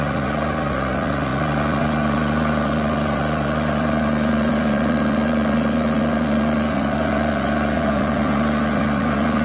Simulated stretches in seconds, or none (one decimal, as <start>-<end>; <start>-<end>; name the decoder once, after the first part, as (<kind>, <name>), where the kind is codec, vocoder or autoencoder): 0.0-9.4 (vocoder, Vocos)